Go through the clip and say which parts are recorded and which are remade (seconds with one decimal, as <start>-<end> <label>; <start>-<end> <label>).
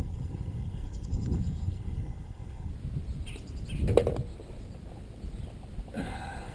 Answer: 0.0-2.7 remade; 2.7-6.0 recorded; 6.0-6.5 remade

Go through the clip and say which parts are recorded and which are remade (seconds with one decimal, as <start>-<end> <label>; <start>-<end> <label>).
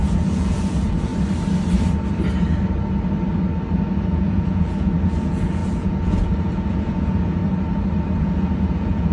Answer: 0.0-1.1 remade; 1.1-4.0 recorded; 4.0-7.4 remade; 7.4-8.2 recorded; 8.2-9.1 remade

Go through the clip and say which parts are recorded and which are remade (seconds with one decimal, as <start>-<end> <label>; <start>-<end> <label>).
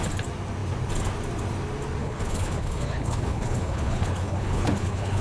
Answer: 0.0-2.0 recorded; 2.0-5.2 remade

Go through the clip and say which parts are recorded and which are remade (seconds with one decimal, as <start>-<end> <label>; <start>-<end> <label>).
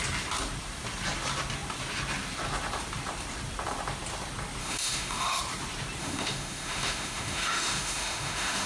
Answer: 0.0-4.6 recorded; 4.6-5.4 remade; 5.4-6.0 recorded; 6.0-8.7 remade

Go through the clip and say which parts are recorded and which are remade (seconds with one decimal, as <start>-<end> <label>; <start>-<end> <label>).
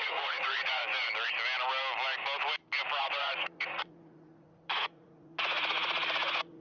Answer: 0.0-0.8 remade; 0.8-3.0 recorded; 3.0-6.6 remade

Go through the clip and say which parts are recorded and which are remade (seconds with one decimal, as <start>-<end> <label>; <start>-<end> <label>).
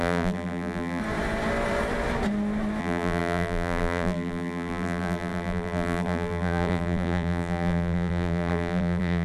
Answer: 0.0-1.0 remade; 1.0-2.8 recorded; 2.8-9.2 remade